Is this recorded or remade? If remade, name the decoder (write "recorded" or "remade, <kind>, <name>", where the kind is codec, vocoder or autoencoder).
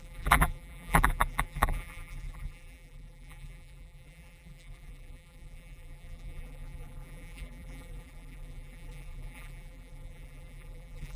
remade, vocoder, BigVGAN v2